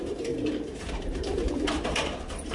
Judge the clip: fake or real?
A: fake